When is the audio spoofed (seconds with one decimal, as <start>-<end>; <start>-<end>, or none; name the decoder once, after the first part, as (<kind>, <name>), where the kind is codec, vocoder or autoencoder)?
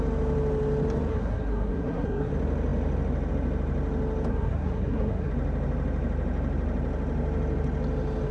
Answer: 1.1-2.3 (codec, SNAC); 4.3-5.3